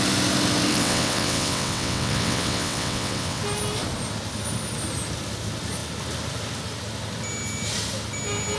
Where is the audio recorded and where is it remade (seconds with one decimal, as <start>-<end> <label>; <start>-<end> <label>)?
0.0-0.7 recorded; 0.7-3.4 remade; 3.4-8.6 recorded